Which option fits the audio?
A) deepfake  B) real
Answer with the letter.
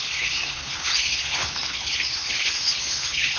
A